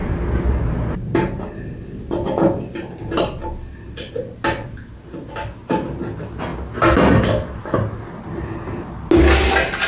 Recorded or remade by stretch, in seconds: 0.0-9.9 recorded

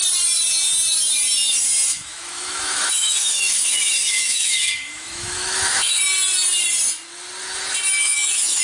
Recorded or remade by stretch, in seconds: 0.0-1.9 recorded; 1.9-6.0 remade; 6.0-8.0 recorded; 8.0-8.6 remade

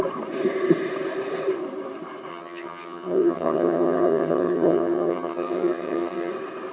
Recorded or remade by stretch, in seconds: 0.0-2.3 recorded; 2.3-6.3 remade; 6.3-6.7 recorded

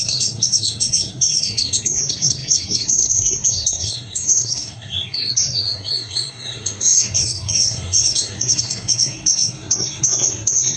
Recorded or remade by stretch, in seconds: 0.0-10.8 remade

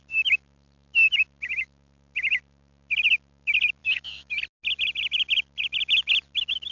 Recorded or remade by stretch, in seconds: 0.0-3.8 recorded; 3.8-4.3 remade; 4.3-6.7 recorded

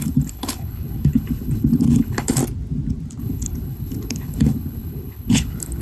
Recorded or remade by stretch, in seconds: 0.0-2.4 remade; 2.4-3.2 recorded; 3.2-5.8 remade

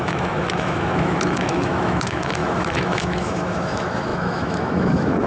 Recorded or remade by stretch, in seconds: 0.0-5.3 remade